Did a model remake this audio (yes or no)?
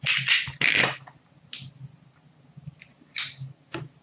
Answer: no